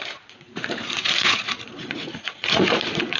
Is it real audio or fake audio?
fake